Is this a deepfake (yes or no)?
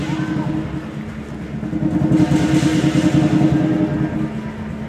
no